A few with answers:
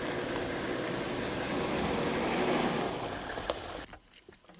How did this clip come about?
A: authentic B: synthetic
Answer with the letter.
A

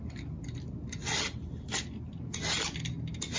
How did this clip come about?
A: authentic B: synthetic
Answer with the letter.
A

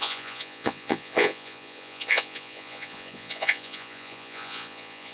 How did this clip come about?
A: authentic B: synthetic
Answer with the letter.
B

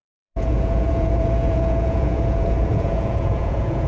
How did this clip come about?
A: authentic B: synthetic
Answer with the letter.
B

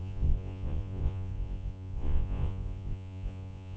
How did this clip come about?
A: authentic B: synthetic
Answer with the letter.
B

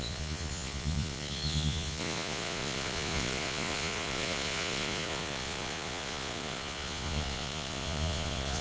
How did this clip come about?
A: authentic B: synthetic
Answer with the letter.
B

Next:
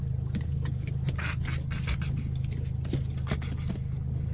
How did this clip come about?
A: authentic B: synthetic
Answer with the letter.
A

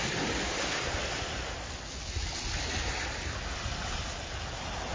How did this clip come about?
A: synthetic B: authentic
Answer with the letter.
B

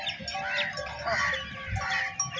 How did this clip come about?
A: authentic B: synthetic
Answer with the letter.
A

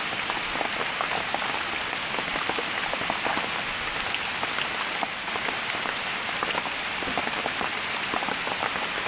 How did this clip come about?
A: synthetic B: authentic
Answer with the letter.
B